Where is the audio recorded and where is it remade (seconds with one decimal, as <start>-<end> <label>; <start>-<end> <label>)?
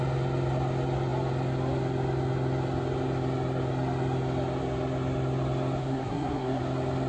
0.0-5.8 recorded; 5.8-6.6 remade; 6.6-7.1 recorded